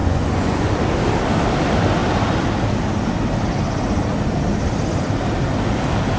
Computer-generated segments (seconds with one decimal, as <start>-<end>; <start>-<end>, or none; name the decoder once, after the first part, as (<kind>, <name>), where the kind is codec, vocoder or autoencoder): 0.0-0.7 (vocoder, Vocos)